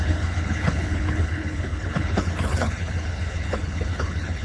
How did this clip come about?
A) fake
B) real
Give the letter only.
A